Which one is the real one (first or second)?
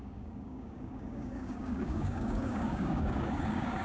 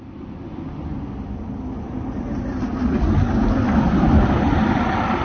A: second